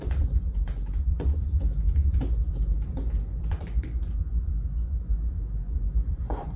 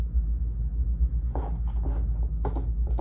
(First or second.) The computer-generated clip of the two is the first